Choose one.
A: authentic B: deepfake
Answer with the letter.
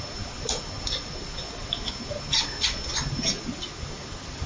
A